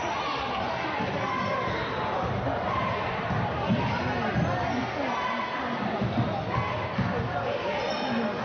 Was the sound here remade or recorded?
recorded